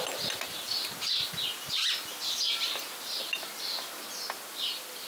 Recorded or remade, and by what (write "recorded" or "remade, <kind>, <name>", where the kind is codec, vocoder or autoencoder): recorded